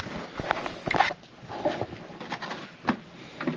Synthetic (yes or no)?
no